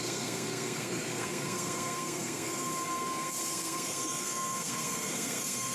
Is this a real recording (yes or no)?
no